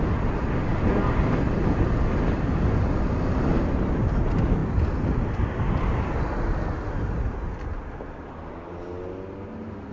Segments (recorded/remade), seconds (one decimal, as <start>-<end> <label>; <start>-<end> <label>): 0.0-0.7 recorded; 0.7-1.2 remade; 1.2-9.9 recorded